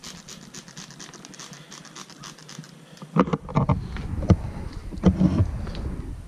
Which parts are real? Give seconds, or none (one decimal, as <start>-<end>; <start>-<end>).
0.0-6.3